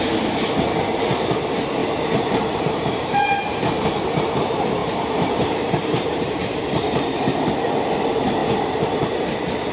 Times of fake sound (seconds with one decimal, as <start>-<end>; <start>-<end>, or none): 1.8-3.3; 4.8-7.5; 8.4-9.1